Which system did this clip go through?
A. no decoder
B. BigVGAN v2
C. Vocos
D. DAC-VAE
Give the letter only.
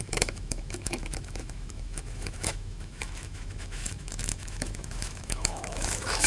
D